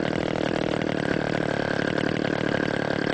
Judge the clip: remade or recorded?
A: recorded